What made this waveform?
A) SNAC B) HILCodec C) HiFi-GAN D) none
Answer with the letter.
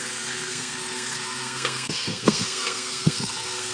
A